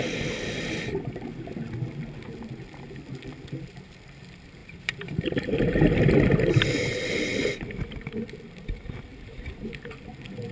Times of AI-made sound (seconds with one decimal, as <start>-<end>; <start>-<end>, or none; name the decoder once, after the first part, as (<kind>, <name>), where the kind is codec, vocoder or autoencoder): 4.6-5.2 (vocoder, BigVGAN v2); 9.1-9.9